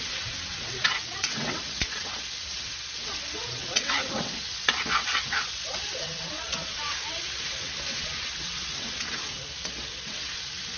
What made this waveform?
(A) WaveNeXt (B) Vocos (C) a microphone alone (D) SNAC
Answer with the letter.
A